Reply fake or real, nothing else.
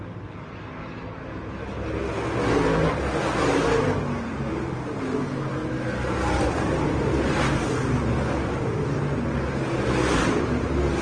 real